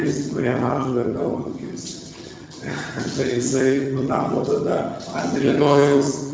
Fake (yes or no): yes